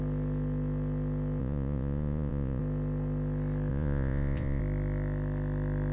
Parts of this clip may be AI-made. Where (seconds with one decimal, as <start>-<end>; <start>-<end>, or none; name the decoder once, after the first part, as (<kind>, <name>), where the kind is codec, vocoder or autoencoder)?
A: 1.4-2.6 (vocoder, Vocos); 3.7-4.6